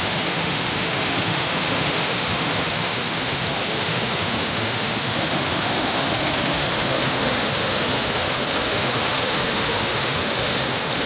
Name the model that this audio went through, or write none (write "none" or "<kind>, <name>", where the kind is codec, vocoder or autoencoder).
autoencoder, DAC-VAE